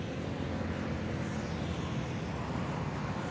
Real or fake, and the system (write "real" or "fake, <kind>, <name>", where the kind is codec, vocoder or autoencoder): real